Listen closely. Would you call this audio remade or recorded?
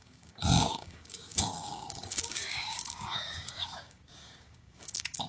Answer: remade